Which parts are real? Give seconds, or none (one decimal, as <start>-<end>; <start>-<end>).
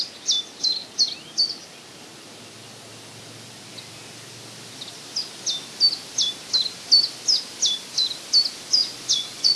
0.0-8.8